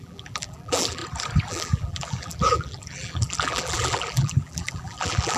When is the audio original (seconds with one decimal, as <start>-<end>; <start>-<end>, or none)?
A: 1.0-1.5